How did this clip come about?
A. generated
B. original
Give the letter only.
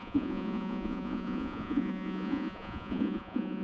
A